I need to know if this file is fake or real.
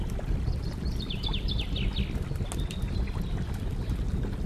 real